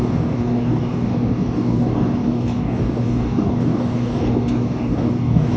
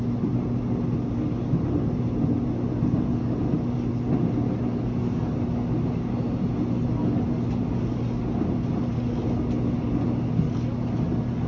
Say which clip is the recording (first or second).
second